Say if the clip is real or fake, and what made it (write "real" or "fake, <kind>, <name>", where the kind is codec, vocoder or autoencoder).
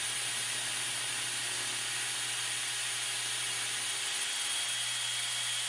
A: real